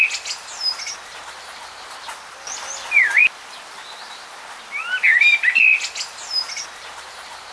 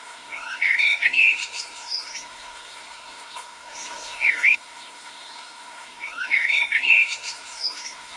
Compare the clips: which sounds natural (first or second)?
first